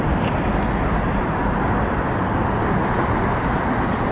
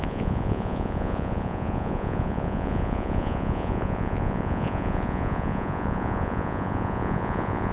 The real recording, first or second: first